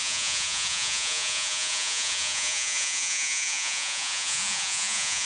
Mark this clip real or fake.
fake